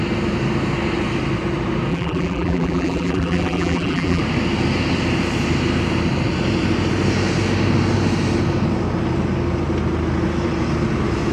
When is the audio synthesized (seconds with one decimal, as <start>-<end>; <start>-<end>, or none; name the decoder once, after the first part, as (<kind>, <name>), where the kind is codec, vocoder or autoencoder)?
1.9-4.2 (vocoder, BigVGAN v2)

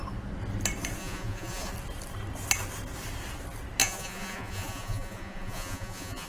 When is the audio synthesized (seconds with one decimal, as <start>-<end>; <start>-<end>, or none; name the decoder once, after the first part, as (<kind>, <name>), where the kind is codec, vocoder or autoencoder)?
1.0-1.7 (vocoder, Vocos); 3.8-6.3

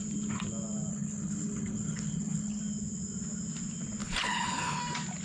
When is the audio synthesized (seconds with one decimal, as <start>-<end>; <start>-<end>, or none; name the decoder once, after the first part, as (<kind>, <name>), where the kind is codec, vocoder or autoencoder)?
0.9-2.6 (codec, HILCodec); 4.0-4.8

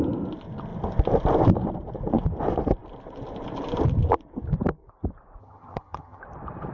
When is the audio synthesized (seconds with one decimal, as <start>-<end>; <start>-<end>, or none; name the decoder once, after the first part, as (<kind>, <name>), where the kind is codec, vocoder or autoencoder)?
5.4-6.2 (vocoder, HiFi-GAN)